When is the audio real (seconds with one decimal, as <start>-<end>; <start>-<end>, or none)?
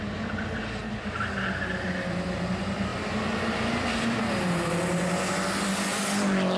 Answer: 0.0-6.6